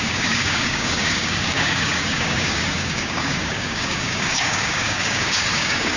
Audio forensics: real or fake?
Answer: fake